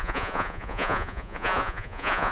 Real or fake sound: fake